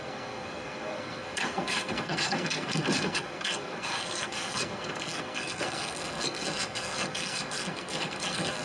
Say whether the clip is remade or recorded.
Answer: remade